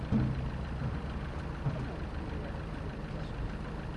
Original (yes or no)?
yes